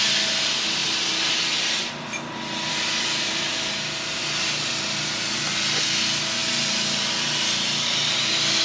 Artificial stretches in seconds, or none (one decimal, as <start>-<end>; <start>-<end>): none